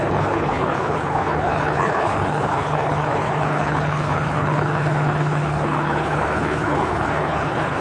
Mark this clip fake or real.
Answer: fake